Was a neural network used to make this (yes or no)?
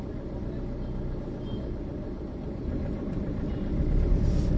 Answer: no